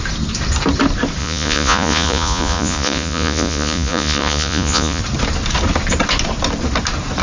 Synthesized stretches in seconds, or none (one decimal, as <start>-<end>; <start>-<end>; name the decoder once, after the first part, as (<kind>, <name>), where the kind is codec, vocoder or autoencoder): 1.2-5.0 (vocoder, Vocos)

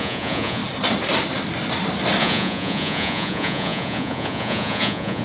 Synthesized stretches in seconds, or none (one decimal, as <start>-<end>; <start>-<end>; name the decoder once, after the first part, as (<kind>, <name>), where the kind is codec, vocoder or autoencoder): 0.0-0.6 (vocoder, Vocos); 2.2-5.2

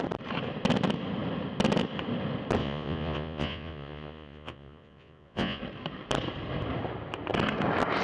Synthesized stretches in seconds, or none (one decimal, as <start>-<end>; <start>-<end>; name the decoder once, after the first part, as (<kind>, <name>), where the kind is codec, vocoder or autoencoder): 2.6-5.6 (vocoder, Vocos)

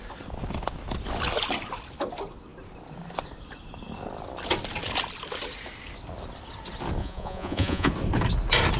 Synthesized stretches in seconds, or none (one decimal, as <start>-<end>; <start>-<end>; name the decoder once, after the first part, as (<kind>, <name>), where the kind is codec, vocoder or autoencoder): 7.0-7.9 (vocoder, Vocos)

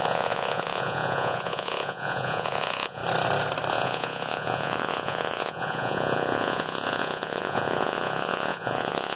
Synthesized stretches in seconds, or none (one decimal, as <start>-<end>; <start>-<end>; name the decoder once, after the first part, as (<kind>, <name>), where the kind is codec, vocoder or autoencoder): 0.0-3.0 (vocoder, Vocos); 3.7-9.2